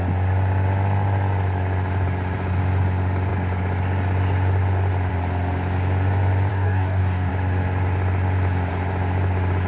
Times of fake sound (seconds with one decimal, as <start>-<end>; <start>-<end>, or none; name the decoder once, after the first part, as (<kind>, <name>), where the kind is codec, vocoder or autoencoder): 6.5-7.3 (codec, DAC)